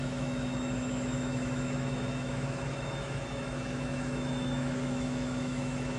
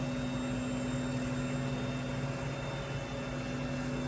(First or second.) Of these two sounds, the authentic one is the second